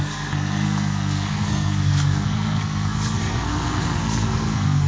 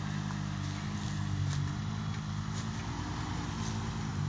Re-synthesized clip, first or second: first